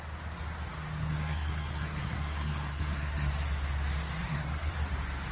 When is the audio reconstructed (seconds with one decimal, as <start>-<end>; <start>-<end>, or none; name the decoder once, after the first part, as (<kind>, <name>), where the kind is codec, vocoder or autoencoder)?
1.1-3.3 (codec, SNAC); 4.2-4.7